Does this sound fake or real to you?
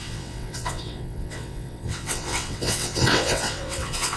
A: fake